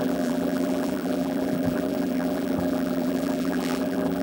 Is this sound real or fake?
fake